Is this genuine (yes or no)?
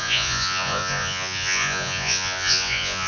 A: no